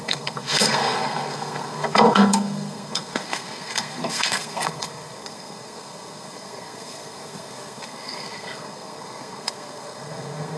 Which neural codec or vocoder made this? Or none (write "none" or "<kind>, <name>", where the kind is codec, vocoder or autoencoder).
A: codec, SNAC